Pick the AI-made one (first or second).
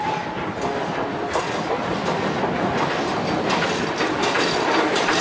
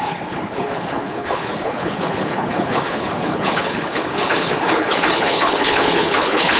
second